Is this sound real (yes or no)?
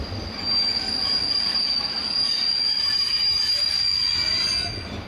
yes